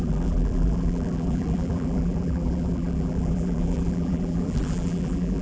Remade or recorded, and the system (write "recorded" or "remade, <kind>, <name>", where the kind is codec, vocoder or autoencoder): remade, vocoder, BigVGAN v2